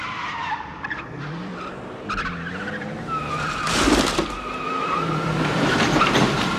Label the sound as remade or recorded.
remade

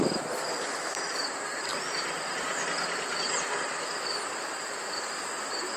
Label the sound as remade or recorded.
recorded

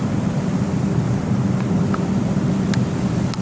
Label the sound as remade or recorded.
recorded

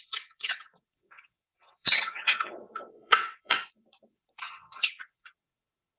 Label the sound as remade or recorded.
remade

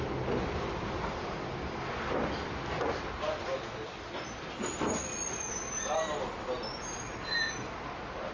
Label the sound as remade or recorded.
recorded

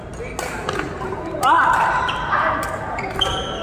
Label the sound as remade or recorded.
recorded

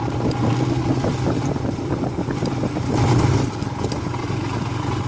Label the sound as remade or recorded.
recorded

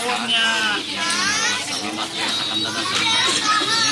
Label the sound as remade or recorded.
recorded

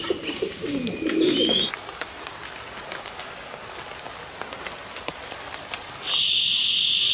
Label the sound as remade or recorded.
recorded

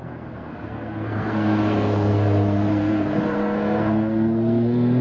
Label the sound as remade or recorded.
remade